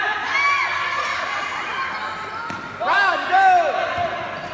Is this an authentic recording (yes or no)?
yes